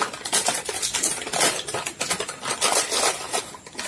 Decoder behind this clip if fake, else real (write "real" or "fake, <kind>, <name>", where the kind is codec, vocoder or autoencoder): fake, vocoder, BigVGAN v2